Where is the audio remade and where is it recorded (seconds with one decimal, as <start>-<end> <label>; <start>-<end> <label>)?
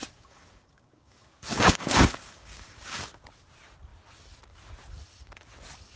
0.0-3.0 remade; 3.0-6.0 recorded